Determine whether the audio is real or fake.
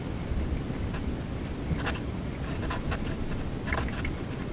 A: real